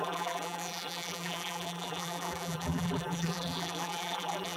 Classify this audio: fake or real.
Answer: fake